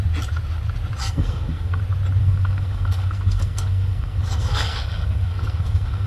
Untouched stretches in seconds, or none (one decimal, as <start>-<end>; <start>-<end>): 0.0-1.0; 1.8-2.2